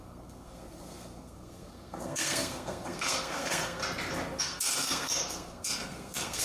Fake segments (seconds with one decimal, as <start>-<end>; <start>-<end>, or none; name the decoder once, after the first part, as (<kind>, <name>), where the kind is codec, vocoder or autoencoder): 0.0-3.8 (codec, SNAC); 4.4-6.4